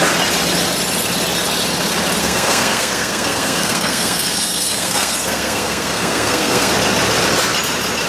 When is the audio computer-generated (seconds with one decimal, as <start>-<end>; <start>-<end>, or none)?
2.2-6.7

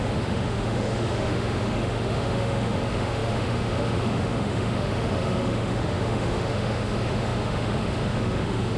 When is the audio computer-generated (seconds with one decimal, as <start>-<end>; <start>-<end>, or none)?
0.0-8.8

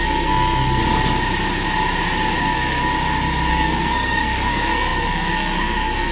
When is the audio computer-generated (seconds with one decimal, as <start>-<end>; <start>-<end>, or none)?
0.0-0.8; 2.4-2.9; 3.5-6.1

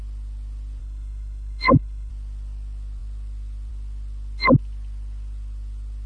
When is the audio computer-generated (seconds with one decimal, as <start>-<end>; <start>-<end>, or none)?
0.8-2.1

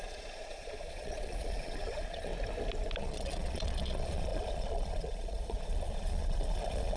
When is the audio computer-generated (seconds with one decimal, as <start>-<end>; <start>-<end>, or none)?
0.0-2.3; 3.0-7.0